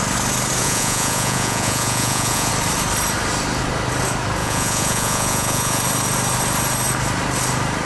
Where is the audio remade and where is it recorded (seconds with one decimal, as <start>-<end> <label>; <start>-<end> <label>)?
0.0-0.6 recorded; 0.6-2.5 remade; 2.5-4.4 recorded; 4.4-5.8 remade; 5.8-7.8 recorded